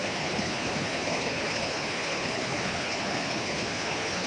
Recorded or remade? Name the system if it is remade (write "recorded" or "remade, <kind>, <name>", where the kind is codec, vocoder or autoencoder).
remade, codec, HILCodec